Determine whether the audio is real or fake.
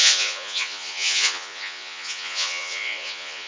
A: fake